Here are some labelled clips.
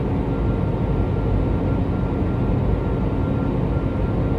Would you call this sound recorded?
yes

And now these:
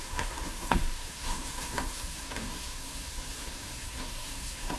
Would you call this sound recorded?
no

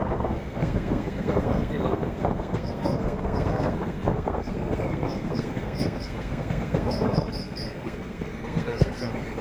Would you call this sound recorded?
no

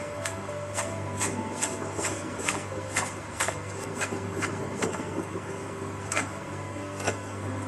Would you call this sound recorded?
no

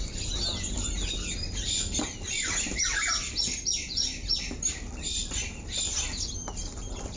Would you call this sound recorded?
yes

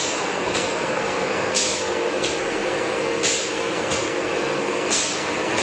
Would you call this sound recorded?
no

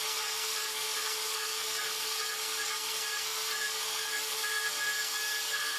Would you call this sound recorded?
no